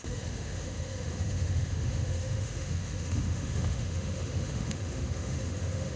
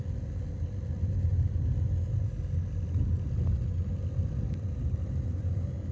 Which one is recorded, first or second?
second